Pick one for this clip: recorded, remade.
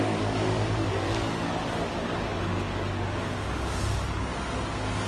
remade